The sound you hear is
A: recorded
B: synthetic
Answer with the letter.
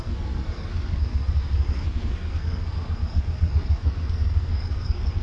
B